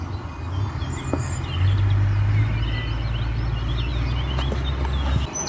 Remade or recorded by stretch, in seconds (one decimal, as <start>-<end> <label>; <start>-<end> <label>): 0.0-5.5 recorded